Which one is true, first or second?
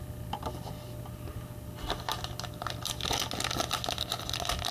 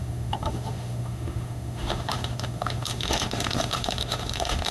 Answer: first